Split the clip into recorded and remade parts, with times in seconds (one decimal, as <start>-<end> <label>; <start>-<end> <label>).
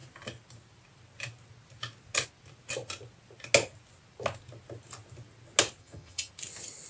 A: 0.0-5.8 recorded; 5.8-6.3 remade; 6.3-6.9 recorded